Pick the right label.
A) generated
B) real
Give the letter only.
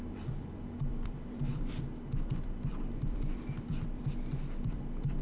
A